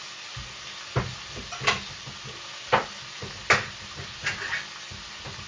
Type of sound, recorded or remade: recorded